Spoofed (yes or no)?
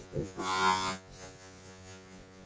yes